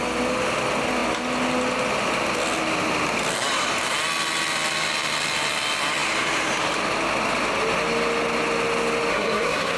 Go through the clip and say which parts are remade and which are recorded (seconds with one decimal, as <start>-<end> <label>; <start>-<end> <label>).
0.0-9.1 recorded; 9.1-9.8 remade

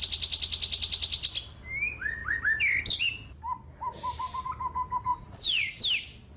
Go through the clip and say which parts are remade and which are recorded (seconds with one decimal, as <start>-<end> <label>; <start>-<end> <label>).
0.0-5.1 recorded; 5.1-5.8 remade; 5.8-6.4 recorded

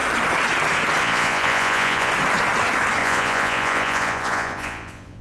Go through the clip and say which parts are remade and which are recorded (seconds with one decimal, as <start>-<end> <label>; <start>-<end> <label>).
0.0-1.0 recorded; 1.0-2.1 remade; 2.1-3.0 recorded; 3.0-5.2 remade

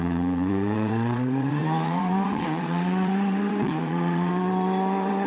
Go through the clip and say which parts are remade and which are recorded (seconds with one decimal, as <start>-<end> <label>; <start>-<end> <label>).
0.0-5.3 remade